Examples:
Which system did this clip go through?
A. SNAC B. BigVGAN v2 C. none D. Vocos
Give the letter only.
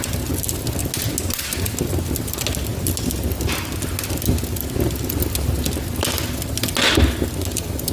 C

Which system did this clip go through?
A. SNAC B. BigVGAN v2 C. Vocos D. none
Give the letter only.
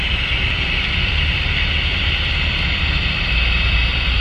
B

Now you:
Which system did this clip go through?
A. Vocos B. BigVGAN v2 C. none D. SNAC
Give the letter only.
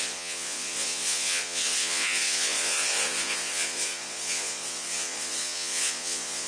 A